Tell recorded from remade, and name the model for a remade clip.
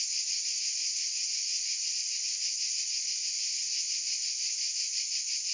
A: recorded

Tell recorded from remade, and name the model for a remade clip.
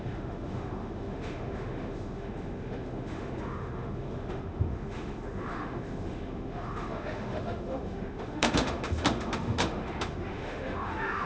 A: remade, autoencoder, DAC-VAE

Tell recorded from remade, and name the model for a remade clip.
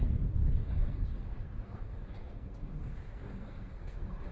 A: remade, codec, SNAC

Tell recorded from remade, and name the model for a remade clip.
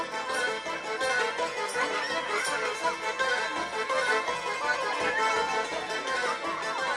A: recorded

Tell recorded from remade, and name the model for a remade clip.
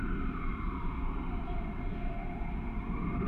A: remade, vocoder, BigVGAN v2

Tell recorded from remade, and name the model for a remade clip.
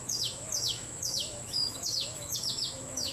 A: remade, autoencoder, DAC-VAE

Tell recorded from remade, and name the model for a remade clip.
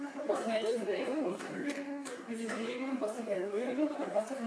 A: remade, codec, SNAC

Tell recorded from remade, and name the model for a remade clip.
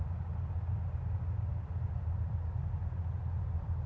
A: recorded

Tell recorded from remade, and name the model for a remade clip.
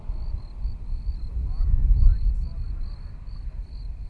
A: recorded